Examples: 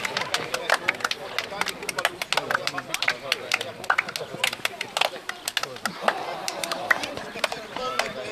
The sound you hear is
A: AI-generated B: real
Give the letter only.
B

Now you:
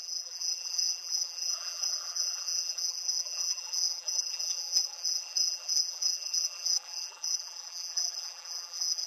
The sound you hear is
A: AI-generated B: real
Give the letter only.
A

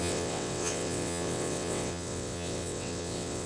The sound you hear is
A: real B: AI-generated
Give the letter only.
B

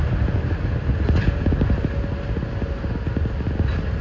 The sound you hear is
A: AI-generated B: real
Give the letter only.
B